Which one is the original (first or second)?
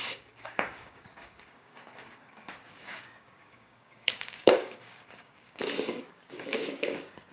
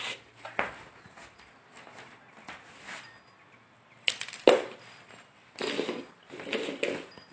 second